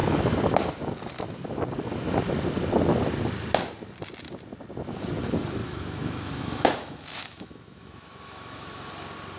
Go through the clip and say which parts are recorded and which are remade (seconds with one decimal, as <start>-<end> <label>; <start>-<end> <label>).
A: 0.0-5.6 recorded; 5.6-8.9 remade; 8.9-9.4 recorded